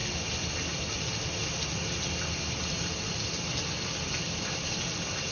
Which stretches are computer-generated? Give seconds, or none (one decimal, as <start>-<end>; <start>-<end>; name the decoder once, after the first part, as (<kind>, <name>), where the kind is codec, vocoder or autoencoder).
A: none